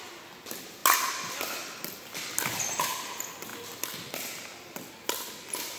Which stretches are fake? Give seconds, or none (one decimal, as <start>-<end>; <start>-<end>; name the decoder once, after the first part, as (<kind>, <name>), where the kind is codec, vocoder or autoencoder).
none